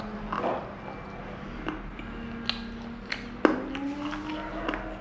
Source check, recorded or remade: recorded